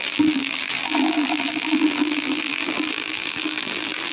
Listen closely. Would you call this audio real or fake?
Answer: fake